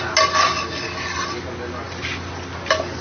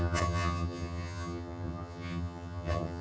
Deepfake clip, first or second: second